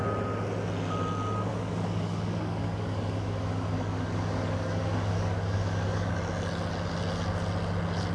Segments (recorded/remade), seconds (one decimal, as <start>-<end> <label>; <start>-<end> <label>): 0.0-1.5 recorded; 1.5-6.1 remade; 6.1-8.1 recorded